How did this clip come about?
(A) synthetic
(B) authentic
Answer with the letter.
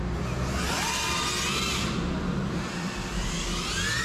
B